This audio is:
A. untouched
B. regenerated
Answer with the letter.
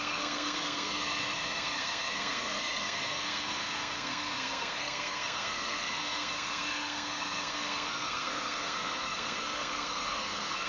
B